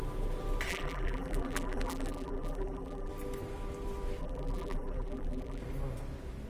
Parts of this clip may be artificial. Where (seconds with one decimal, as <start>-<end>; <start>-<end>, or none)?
0.7-3.1; 4.2-5.6